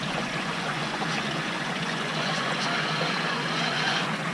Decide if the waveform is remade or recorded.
remade